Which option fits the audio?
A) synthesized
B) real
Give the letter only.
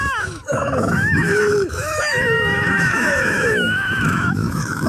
A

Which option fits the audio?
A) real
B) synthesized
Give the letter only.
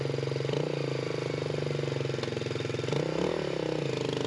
A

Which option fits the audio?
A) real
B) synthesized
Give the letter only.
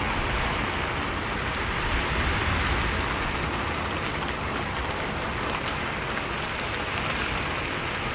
A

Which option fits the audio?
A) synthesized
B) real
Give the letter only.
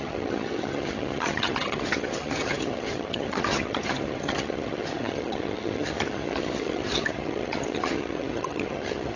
A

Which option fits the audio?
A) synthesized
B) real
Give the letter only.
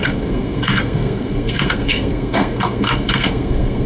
A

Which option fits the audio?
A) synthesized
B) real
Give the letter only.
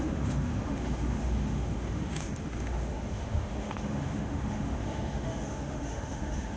A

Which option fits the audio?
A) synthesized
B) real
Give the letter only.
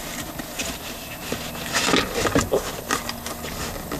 B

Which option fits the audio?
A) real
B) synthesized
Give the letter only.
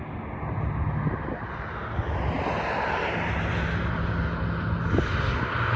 A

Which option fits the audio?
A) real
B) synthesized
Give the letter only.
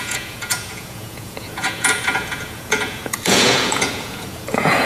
B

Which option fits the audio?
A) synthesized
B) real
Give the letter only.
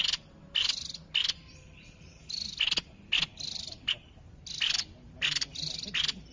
B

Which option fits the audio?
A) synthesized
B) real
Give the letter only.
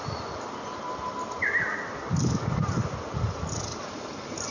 B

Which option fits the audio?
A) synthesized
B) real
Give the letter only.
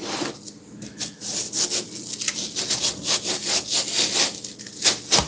B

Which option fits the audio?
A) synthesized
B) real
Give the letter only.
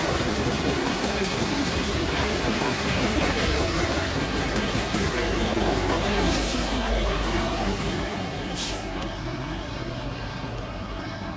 A